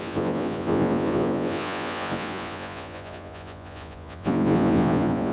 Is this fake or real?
fake